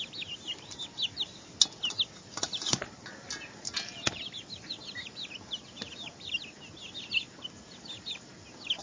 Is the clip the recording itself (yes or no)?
yes